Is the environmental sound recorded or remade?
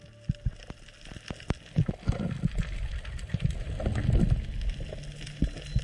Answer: recorded